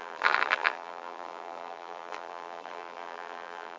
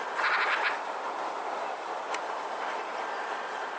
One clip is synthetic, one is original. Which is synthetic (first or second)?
first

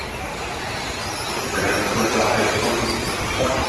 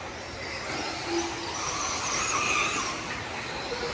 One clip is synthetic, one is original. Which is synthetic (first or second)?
first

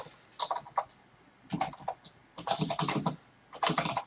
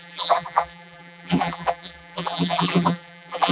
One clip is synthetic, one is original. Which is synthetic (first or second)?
second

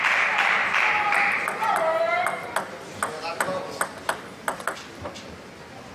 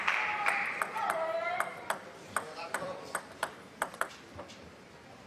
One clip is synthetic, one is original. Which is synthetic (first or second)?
second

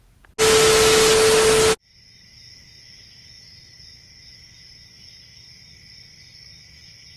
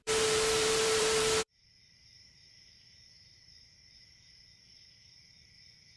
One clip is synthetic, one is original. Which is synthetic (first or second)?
second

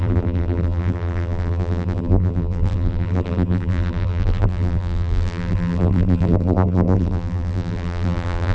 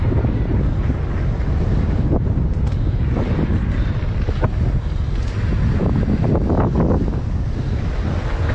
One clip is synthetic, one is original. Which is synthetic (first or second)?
first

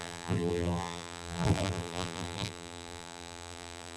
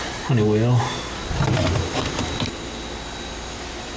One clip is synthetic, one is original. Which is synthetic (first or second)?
first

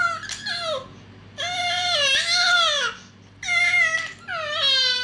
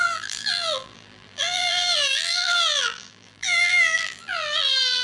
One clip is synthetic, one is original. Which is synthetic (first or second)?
second